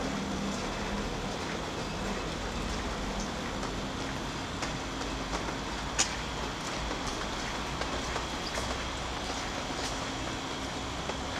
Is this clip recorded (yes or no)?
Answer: yes